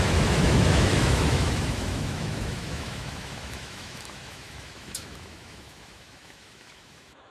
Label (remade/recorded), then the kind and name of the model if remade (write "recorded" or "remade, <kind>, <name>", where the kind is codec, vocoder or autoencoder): remade, autoencoder, DAC-VAE